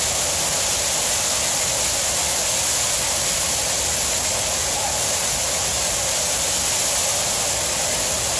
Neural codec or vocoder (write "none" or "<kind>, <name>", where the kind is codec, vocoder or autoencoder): none